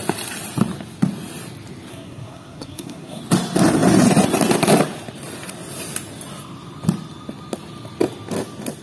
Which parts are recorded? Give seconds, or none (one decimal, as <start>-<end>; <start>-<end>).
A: 0.0-1.9; 3.2-8.8